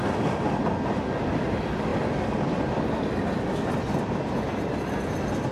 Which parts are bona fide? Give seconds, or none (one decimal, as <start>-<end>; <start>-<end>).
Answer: 0.0-5.5